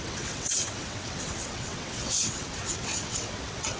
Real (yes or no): no